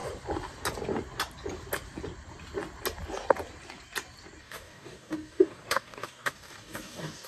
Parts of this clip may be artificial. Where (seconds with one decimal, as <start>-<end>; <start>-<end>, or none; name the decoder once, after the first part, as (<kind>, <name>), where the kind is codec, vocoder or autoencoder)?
4.4-7.3 (codec, DAC)